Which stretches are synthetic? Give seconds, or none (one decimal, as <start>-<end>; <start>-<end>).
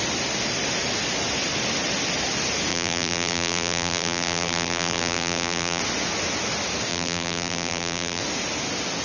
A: 2.7-5.8; 6.9-8.2